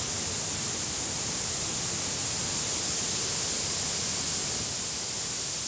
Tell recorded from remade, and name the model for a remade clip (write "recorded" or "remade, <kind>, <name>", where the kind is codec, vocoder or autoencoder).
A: recorded